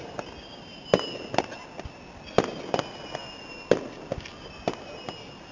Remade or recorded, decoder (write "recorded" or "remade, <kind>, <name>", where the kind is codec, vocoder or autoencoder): recorded